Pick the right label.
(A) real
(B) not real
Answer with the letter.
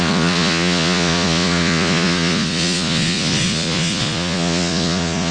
B